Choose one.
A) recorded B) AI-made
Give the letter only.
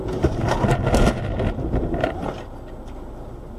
A